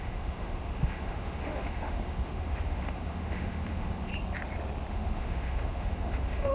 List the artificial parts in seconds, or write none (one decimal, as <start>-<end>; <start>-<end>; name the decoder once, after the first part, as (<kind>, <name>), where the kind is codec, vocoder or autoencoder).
0.0-4.1 (autoencoder, DAC-VAE); 4.9-6.5